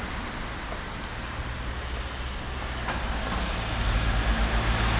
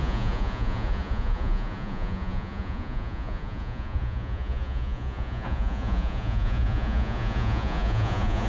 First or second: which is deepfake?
second